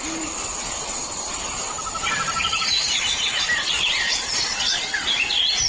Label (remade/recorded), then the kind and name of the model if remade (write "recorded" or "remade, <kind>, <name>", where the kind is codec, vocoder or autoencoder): recorded